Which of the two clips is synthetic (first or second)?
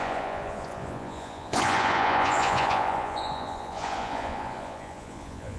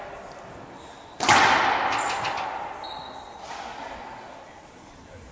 first